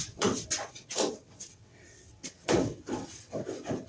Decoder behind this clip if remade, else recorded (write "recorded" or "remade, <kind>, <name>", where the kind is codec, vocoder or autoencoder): remade, vocoder, WaveNeXt